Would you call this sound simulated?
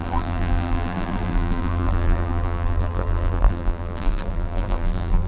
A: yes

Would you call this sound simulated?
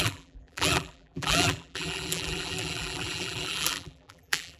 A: yes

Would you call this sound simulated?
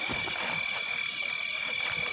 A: no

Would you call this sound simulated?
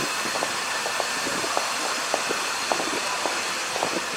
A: no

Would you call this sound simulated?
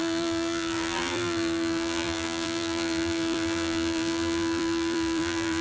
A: yes